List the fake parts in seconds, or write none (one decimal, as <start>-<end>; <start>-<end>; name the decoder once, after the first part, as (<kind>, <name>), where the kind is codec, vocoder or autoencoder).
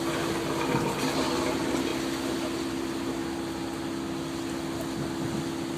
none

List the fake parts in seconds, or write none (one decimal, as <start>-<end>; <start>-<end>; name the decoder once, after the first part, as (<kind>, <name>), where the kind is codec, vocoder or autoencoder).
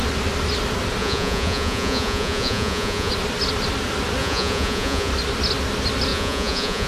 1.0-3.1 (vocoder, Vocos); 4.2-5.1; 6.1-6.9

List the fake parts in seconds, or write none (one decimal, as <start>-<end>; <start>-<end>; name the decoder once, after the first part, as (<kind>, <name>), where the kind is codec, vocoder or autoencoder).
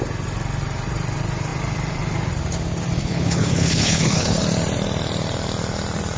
3.0-4.4 (codec, HILCodec)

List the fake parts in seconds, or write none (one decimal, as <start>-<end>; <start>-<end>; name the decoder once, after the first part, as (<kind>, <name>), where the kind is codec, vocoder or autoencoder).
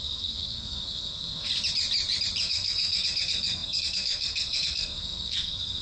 0.0-1.5 (codec, SNAC); 2.4-5.8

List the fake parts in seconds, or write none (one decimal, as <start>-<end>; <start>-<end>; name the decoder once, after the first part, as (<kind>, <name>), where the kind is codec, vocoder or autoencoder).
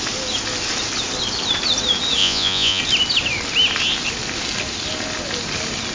2.2-2.8 (vocoder, Vocos)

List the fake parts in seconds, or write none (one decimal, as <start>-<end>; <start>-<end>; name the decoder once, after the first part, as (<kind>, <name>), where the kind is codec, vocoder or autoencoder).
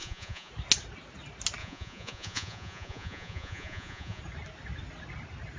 0.0-0.5 (vocoder, Vocos); 1.6-4.2